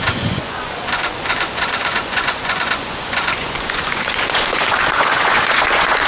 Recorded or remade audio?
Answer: remade